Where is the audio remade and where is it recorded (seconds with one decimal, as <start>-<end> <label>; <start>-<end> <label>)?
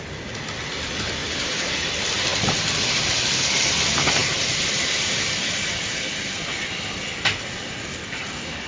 0.0-1.2 recorded; 1.2-1.7 remade; 1.7-8.7 recorded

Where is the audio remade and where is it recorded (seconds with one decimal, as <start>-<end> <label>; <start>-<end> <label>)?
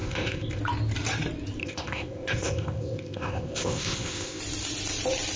0.0-0.6 remade; 0.6-1.6 recorded; 1.6-4.4 remade; 4.4-5.4 recorded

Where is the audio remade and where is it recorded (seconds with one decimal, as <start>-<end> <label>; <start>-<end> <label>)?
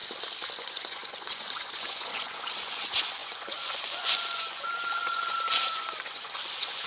0.0-0.6 recorded; 0.6-6.9 remade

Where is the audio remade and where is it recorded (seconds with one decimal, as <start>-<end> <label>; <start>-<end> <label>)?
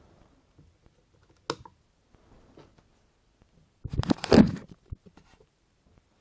0.0-0.8 remade; 0.8-4.2 recorded; 4.2-6.2 remade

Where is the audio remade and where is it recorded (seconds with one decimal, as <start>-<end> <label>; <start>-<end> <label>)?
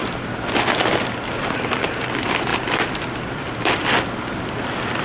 0.0-5.0 recorded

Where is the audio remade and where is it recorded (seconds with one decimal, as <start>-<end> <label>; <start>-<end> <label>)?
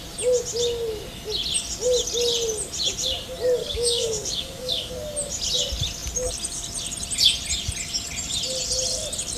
0.0-3.6 recorded; 3.6-4.9 remade; 4.9-9.4 recorded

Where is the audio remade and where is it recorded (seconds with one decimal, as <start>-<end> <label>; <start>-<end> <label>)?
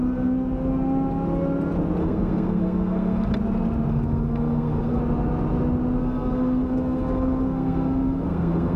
0.0-2.0 recorded; 2.0-3.3 remade; 3.3-3.9 recorded; 3.9-5.0 remade; 5.0-6.0 recorded; 6.0-8.8 remade